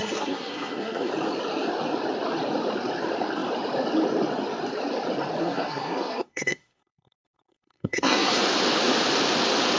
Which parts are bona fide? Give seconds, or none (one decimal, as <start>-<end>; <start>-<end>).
1.1-5.4; 8.4-9.8